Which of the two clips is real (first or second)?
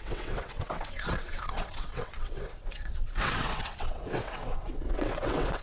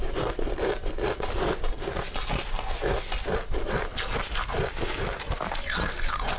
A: second